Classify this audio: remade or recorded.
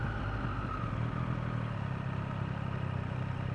recorded